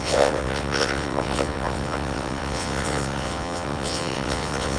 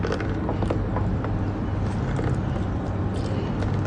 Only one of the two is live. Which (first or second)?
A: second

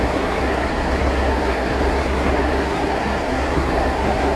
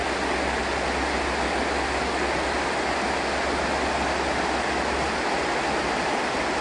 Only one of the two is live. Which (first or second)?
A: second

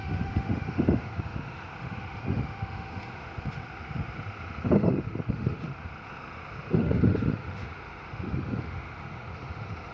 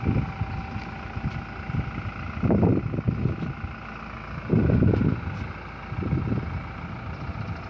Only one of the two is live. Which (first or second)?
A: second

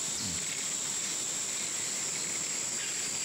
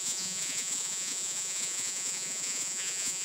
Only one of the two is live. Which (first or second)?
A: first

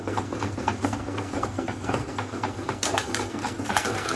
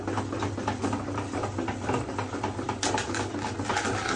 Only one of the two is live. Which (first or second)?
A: second